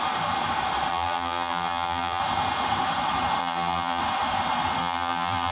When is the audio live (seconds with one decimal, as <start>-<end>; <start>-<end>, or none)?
0.0-0.9; 2.2-3.4; 4.0-4.8